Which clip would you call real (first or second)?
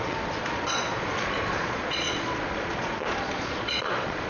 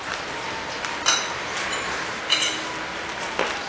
second